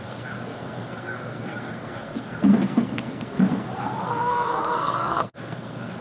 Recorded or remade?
remade